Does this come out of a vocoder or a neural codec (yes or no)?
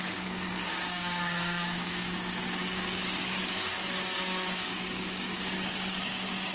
yes